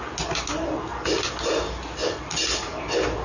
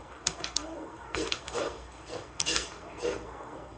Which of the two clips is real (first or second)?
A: first